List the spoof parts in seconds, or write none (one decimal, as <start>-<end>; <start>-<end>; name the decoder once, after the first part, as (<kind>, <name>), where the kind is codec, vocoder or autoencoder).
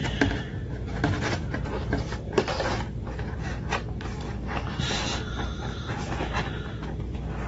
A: 5.1-6.1 (vocoder, BigVGAN v2)